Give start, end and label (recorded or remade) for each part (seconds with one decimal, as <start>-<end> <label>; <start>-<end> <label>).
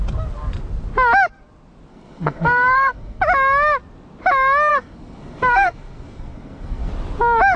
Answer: 0.0-1.9 recorded; 1.9-3.2 remade; 3.2-4.7 recorded; 4.7-6.9 remade; 6.9-7.6 recorded